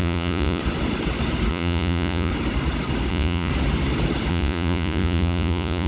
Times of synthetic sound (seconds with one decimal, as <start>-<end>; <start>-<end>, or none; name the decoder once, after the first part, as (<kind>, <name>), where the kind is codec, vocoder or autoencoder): 0.0-0.6 (vocoder, Vocos); 1.5-2.3; 3.1-3.5; 4.3-5.9